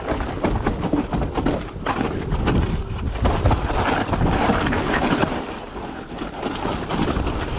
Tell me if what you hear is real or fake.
real